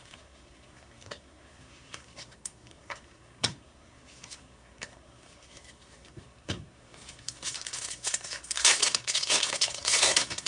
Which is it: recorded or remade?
remade